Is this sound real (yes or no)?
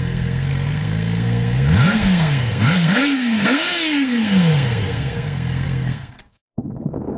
no